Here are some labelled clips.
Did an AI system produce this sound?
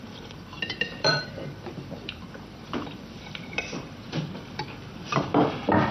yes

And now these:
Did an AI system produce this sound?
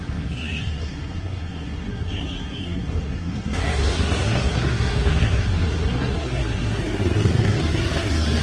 yes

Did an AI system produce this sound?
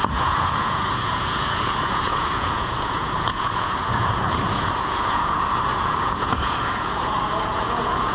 yes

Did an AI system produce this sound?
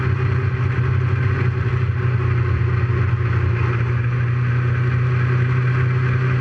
no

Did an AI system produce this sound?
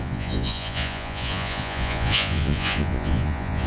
yes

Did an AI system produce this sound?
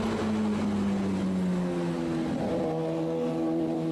no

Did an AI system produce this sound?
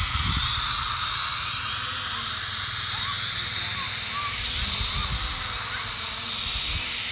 no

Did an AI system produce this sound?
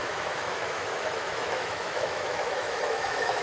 yes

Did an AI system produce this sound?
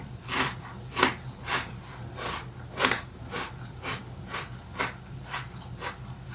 yes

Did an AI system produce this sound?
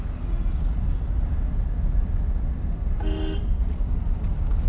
no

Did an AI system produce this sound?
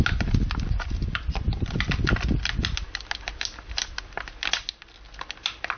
no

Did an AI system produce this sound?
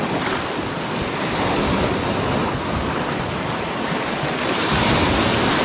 no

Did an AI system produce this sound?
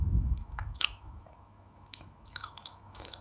yes